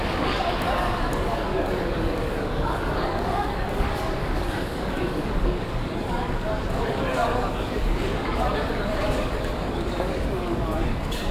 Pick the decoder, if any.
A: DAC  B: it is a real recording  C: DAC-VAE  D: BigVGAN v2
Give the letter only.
A